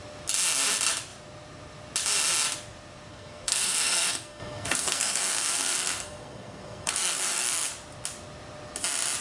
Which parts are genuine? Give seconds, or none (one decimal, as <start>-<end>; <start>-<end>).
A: 0.0-3.1; 7.7-9.2

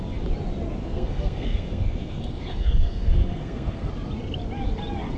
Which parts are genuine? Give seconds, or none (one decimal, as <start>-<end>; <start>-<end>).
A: 0.0-0.8; 3.9-5.2

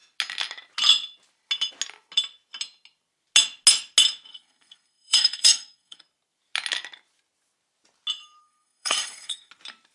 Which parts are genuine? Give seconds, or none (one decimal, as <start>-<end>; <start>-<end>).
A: 0.0-4.3; 6.0-8.4; 9.5-9.9

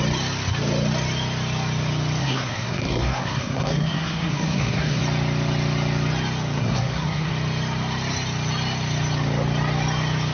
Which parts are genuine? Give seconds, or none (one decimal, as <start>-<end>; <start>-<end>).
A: 0.0-2.2; 5.0-6.6; 7.3-10.3

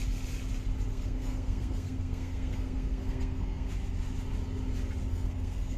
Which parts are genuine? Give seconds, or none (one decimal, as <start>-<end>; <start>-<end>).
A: 0.0-0.9; 3.7-5.1

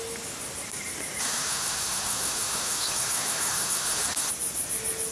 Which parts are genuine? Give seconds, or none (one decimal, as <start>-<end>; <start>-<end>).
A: 0.0-1.2; 4.3-5.1